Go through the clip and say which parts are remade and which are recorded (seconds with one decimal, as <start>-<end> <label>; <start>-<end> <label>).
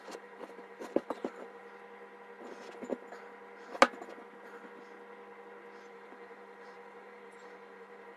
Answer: 0.0-1.6 remade; 1.6-5.9 recorded; 5.9-8.2 remade